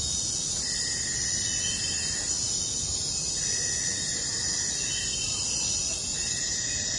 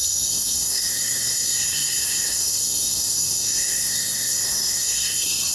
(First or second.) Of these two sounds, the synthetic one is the second